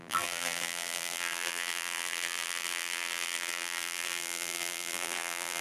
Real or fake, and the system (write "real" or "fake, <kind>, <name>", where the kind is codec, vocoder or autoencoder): fake, vocoder, BigVGAN v2